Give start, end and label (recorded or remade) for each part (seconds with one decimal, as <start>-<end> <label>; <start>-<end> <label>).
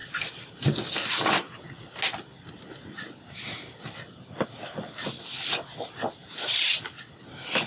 0.0-7.7 recorded